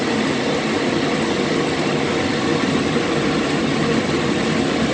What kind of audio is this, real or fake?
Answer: real